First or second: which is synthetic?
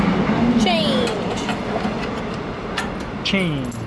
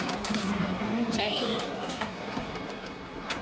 second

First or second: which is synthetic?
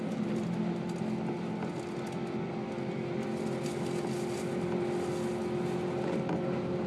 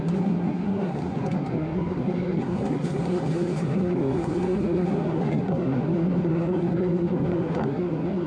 second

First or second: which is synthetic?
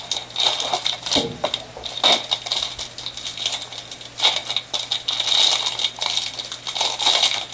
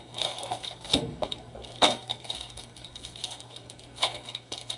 second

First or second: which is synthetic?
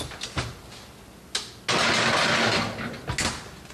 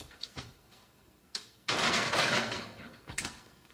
second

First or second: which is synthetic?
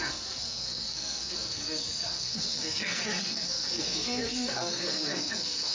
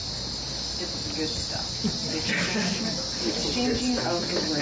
first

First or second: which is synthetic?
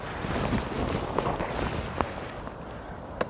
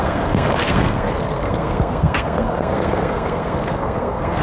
second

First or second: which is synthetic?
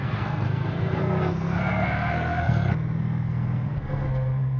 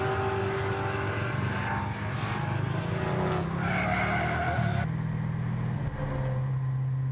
first